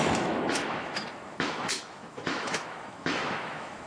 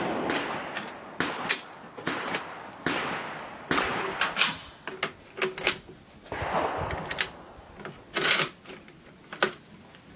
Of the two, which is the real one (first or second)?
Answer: second